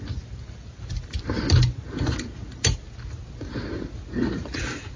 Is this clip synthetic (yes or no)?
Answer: no